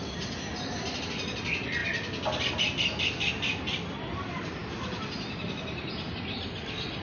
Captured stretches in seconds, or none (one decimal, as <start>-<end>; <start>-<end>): 0.0-7.0